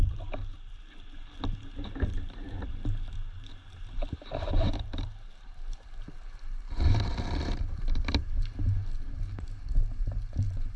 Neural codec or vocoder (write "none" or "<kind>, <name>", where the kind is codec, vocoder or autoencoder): vocoder, BigVGAN v2